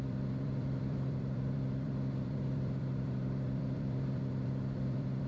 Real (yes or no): no